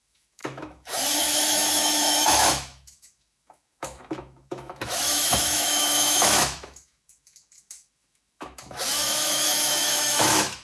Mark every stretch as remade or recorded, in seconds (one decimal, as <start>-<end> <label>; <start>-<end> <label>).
0.0-10.6 remade